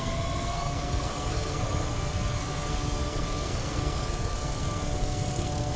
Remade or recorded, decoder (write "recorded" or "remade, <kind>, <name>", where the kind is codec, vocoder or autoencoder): remade, codec, SNAC